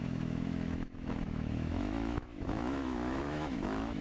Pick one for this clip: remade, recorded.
remade